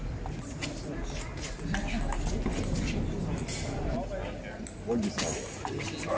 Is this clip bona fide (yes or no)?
yes